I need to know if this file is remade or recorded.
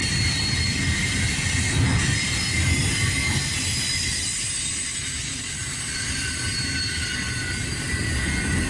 recorded